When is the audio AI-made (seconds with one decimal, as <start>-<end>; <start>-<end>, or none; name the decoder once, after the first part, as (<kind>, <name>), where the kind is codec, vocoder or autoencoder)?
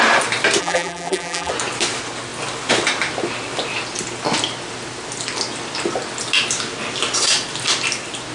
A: 0.6-1.5 (vocoder, BigVGAN v2)